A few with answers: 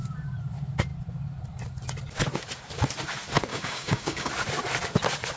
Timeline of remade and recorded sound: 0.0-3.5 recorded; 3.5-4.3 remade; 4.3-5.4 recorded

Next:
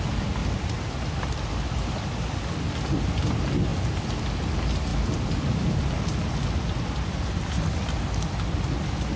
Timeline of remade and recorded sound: 0.0-0.4 recorded; 0.4-1.5 remade; 1.5-4.9 recorded; 4.9-5.9 remade; 5.9-9.2 recorded

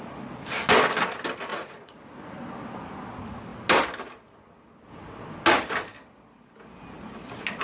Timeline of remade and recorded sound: 0.0-1.5 recorded; 1.5-2.0 remade; 2.0-7.6 recorded

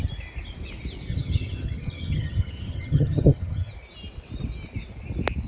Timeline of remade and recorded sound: 0.0-1.1 recorded; 1.1-3.7 remade; 3.7-5.5 recorded

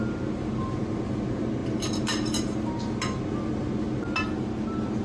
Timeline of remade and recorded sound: 0.0-5.0 recorded

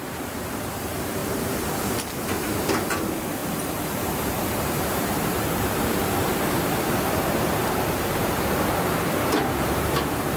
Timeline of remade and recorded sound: 0.0-10.4 remade

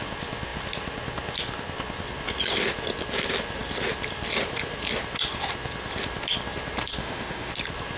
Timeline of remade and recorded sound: 0.0-7.0 recorded; 7.0-7.5 remade; 7.5-8.0 recorded